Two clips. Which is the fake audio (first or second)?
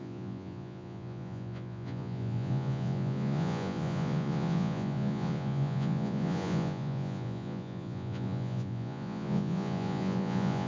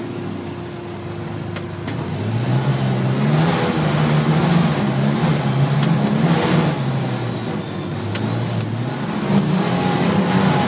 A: first